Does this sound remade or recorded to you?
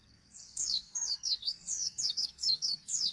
remade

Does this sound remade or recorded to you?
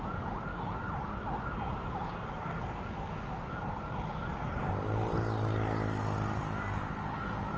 recorded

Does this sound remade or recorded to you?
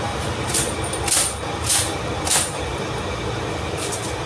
recorded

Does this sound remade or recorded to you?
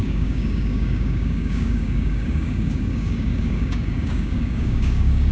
remade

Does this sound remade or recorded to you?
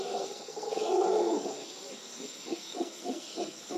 remade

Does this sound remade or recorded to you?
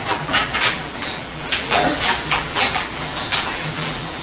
remade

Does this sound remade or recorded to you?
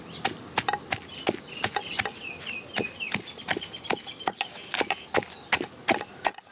recorded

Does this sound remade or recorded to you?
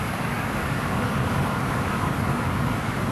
remade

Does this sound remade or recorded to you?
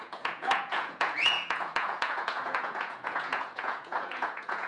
remade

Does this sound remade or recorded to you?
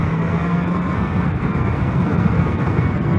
remade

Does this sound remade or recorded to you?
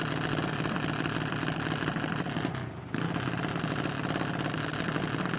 recorded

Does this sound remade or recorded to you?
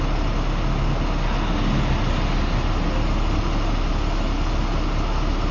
recorded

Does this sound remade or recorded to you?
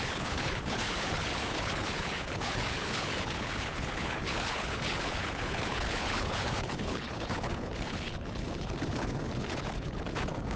remade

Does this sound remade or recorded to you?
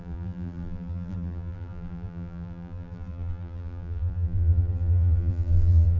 remade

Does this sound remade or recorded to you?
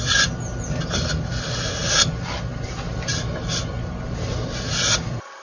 recorded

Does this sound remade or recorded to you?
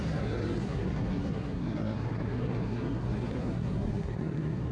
remade